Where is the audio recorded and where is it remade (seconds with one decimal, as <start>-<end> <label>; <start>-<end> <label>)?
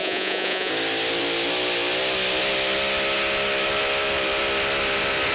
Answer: 0.0-0.7 remade; 0.7-5.3 recorded